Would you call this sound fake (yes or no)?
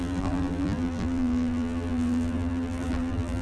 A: yes